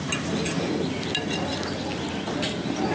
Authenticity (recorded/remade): recorded